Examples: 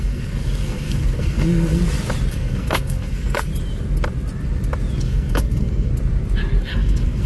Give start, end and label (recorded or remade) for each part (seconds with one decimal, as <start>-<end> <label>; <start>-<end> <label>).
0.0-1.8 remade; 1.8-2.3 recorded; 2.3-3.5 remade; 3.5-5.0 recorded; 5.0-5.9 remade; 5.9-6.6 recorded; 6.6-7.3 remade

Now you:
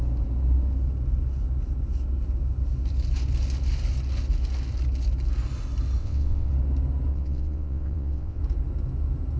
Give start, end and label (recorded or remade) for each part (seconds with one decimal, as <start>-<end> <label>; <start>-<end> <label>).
0.0-6.0 recorded; 6.0-6.5 remade; 6.5-7.1 recorded; 7.1-8.4 remade; 8.4-9.4 recorded

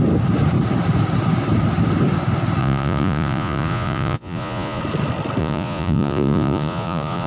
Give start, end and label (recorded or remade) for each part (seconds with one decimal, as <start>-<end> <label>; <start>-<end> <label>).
0.0-2.6 recorded; 2.6-4.8 remade; 4.8-5.4 recorded; 5.4-7.3 remade

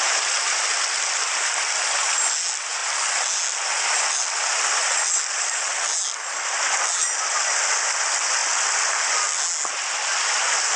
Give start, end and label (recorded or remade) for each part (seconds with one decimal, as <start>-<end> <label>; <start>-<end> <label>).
0.0-10.8 recorded

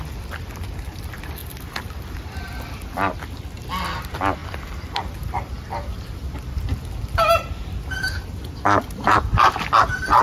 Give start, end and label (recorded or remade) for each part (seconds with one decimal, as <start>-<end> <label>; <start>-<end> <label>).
0.0-4.4 recorded; 4.4-5.5 remade; 5.5-5.9 recorded; 5.9-6.8 remade; 6.8-10.2 recorded

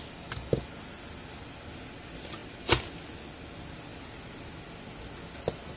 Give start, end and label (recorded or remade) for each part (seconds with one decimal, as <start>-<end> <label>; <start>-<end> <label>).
0.0-5.8 recorded

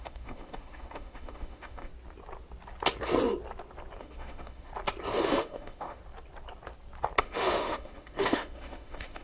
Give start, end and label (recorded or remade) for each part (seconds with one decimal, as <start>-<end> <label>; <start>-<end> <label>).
0.0-1.9 remade; 1.9-4.0 recorded; 4.0-4.7 remade; 4.7-5.2 recorded; 5.2-6.0 remade; 6.0-7.2 recorded; 7.2-9.2 remade